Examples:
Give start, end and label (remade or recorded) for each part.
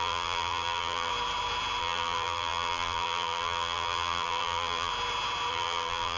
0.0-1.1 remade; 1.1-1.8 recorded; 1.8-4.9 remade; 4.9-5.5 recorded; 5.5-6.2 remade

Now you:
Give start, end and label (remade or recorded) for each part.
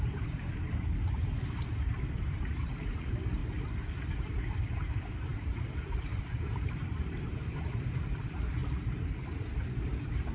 0.0-3.4 remade; 3.4-4.0 recorded; 4.0-10.3 remade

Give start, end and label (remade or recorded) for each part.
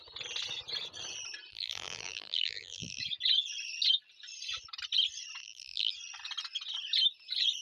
0.0-1.5 recorded; 1.5-3.0 remade; 3.0-5.4 recorded; 5.4-5.9 remade; 5.9-7.6 recorded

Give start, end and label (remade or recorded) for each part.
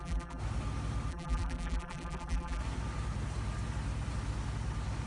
0.0-0.4 remade; 0.4-1.1 recorded; 1.1-2.6 remade; 2.6-5.1 recorded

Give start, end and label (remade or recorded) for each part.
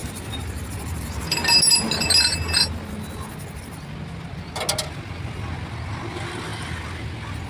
0.0-7.5 recorded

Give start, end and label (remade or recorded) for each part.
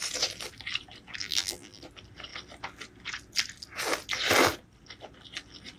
0.0-1.2 recorded; 1.2-1.8 remade; 1.8-5.8 recorded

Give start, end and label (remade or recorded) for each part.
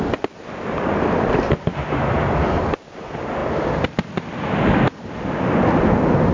0.0-6.3 recorded